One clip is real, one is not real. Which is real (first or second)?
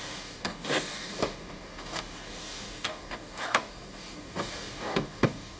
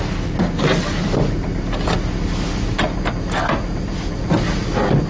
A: second